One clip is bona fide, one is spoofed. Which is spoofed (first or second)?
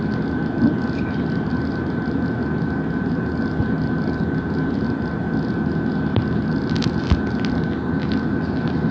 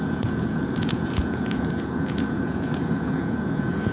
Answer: second